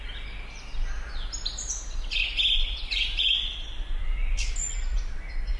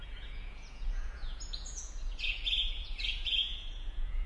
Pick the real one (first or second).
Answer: first